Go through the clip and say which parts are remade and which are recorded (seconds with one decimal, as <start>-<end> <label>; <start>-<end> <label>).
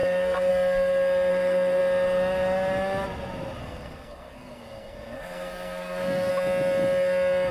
0.0-0.5 remade; 0.5-1.3 recorded; 1.3-1.8 remade; 1.8-3.6 recorded; 3.6-6.3 remade; 6.3-7.5 recorded